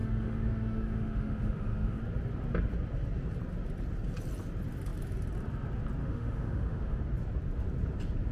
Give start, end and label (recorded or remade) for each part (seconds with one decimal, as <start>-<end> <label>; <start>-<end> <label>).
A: 0.0-2.0 remade; 2.0-6.0 recorded; 6.0-7.0 remade; 7.0-8.3 recorded